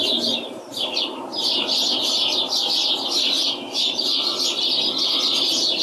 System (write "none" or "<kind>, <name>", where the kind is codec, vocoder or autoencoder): none